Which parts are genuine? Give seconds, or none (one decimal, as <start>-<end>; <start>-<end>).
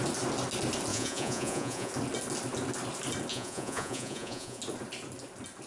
0.0-0.9; 1.9-3.3; 4.6-5.7